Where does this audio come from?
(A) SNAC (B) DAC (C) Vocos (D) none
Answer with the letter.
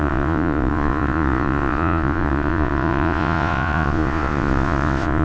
C